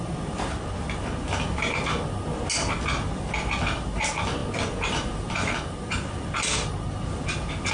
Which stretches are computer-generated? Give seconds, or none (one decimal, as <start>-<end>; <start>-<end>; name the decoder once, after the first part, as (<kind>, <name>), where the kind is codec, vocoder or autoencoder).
none